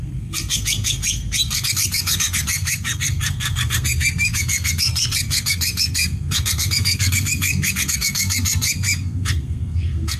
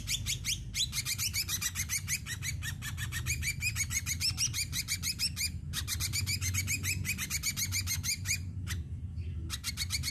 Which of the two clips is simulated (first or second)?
first